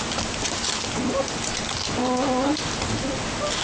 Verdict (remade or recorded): recorded